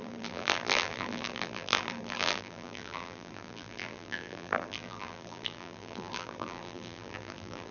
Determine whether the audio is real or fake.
fake